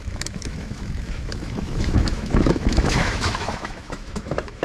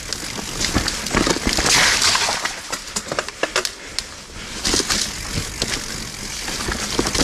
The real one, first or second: second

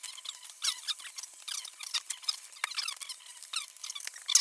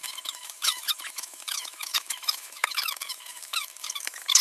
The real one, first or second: first